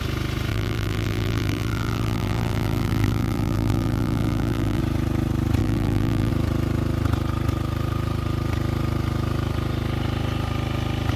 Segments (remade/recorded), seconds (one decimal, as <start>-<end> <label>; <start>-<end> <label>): 0.0-0.5 recorded; 0.5-4.8 remade; 4.8-5.6 recorded; 5.6-6.3 remade; 6.3-11.2 recorded